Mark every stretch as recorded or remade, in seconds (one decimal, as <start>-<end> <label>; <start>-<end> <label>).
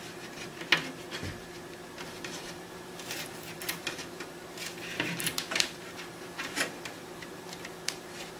0.0-0.5 remade; 0.5-2.0 recorded; 2.0-4.3 remade; 4.3-4.9 recorded; 4.9-8.4 remade